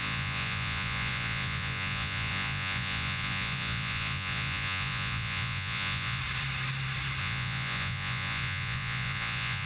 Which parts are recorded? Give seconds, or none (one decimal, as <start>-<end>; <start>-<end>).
6.2-7.2